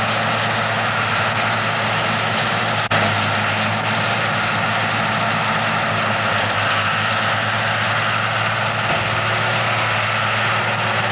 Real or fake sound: real